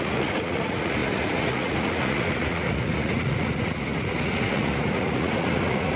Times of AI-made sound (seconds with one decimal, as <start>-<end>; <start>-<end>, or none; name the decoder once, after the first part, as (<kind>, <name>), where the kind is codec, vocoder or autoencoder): 0.0-6.0 (vocoder, Vocos)